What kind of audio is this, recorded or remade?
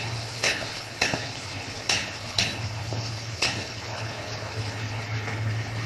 remade